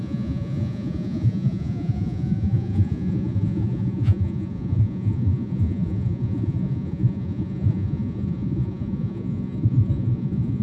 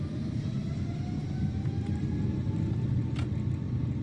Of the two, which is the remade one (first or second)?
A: first